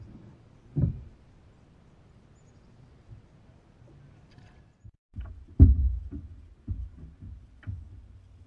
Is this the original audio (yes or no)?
yes